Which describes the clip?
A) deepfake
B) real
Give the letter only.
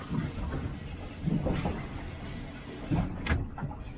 B